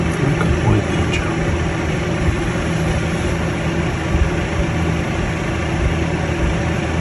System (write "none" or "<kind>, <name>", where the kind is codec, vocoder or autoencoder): none